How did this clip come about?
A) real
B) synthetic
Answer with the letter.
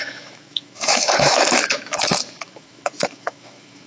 B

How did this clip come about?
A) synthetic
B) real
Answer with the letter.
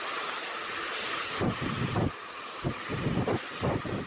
B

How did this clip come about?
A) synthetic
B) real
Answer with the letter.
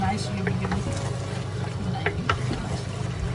B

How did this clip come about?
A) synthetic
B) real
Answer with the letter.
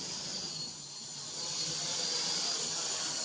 B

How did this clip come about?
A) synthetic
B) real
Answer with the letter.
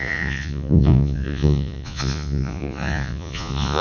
A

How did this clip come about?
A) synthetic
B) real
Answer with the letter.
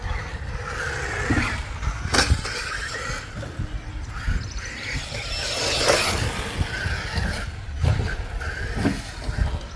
B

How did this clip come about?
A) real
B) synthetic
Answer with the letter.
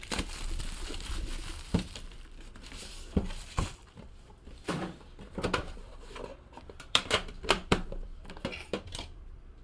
B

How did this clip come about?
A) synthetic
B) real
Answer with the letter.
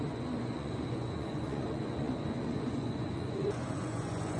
A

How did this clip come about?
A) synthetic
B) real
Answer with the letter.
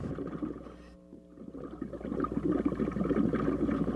B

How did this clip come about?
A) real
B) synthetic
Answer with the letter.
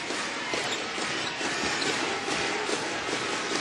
A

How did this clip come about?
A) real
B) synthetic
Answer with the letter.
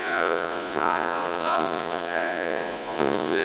B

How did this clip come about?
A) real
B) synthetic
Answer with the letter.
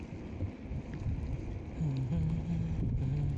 A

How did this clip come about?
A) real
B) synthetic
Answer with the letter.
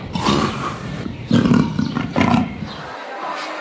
A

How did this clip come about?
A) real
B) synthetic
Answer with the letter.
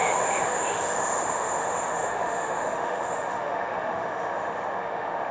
B